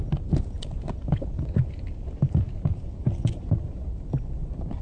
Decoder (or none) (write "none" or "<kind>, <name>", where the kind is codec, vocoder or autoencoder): none